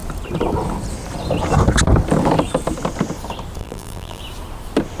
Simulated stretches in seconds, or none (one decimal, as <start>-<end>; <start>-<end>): 3.6-4.2

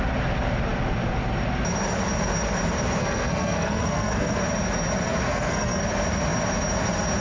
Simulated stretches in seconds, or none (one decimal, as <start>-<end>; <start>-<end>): 3.0-4.4; 5.3-5.8

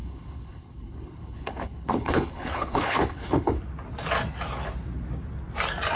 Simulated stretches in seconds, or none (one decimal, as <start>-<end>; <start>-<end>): 0.0-3.6

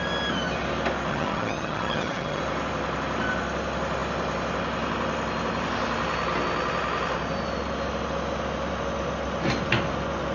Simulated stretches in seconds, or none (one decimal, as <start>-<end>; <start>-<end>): 1.1-2.4